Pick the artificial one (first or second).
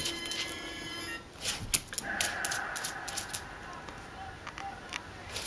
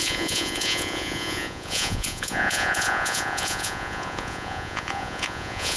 second